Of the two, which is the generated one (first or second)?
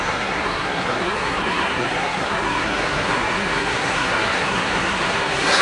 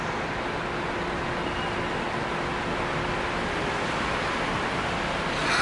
first